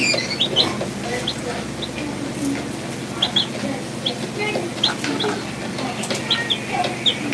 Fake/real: real